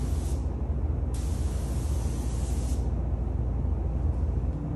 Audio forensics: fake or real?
real